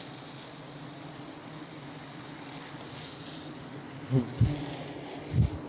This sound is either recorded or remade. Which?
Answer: recorded